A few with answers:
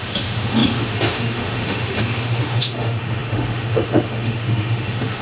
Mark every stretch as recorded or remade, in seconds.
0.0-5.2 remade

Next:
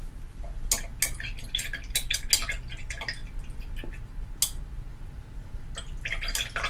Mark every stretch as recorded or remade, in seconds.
0.0-6.7 recorded

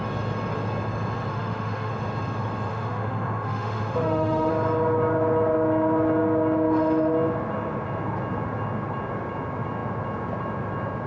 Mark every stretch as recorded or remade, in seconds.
0.0-1.3 recorded; 1.3-1.9 remade; 1.9-2.7 recorded; 2.7-4.5 remade; 4.5-11.1 recorded

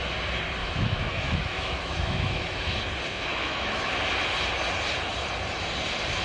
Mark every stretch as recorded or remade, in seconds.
0.0-0.6 recorded; 0.6-2.8 remade; 2.8-3.3 recorded; 3.3-4.0 remade; 4.0-6.2 recorded

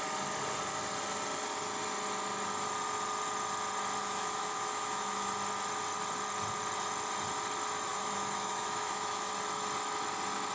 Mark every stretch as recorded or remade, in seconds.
0.0-4.0 recorded; 4.0-5.3 remade; 5.3-7.9 recorded; 7.9-9.3 remade; 9.3-10.5 recorded